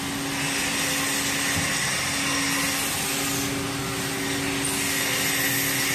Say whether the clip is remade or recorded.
recorded